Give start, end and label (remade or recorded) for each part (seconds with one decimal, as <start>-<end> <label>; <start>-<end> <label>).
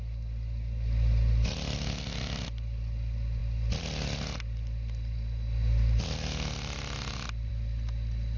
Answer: 0.0-8.4 recorded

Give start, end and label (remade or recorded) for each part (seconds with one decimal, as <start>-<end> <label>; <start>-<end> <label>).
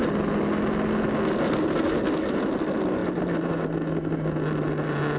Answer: 0.0-5.2 recorded